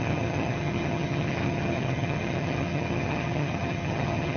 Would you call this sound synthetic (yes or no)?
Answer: yes